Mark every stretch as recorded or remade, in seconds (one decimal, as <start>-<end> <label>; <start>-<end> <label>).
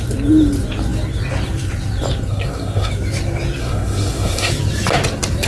0.0-2.3 recorded; 2.3-2.9 remade; 2.9-3.6 recorded; 3.6-4.5 remade; 4.5-5.5 recorded